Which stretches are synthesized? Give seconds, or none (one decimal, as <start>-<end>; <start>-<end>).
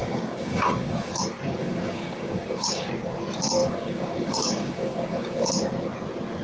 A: 0.0-1.1; 1.6-2.9; 3.6-5.5